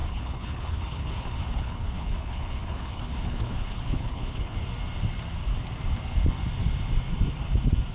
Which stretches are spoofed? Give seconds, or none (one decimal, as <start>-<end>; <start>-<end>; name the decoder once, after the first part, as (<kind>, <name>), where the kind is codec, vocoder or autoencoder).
0.0-4.6 (codec, HILCodec)